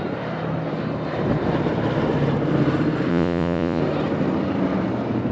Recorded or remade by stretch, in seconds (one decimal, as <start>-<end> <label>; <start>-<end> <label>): 0.0-3.1 recorded; 3.1-3.8 remade; 3.8-5.3 recorded